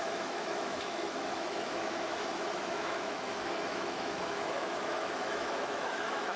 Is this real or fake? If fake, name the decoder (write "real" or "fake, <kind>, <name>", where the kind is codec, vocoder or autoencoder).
fake, autoencoder, DAC-VAE